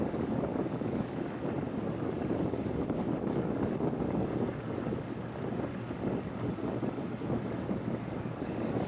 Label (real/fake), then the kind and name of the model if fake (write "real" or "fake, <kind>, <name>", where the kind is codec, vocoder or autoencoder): fake, codec, DAC